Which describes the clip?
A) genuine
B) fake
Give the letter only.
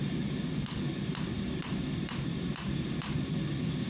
B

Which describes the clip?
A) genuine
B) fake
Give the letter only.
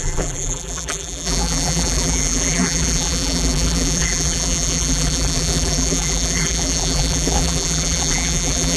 B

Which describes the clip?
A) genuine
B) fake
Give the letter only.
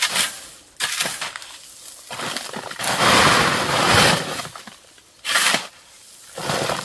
A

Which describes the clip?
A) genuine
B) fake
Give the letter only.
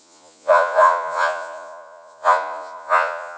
B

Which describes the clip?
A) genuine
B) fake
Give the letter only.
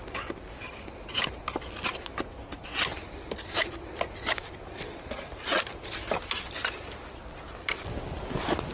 A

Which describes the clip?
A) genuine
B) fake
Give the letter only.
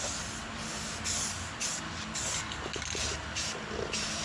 A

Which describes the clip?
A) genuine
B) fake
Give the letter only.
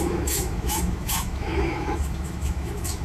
B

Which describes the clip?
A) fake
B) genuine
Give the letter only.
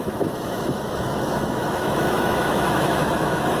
A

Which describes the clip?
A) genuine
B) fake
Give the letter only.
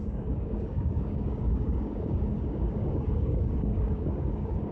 B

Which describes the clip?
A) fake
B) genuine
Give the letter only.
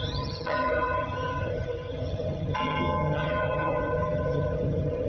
A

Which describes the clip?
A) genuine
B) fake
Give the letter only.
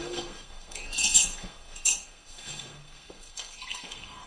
B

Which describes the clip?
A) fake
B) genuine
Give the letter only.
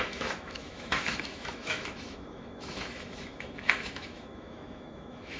A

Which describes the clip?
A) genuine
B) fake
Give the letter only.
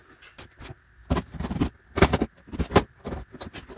A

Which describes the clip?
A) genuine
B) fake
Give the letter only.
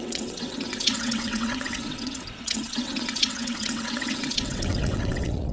B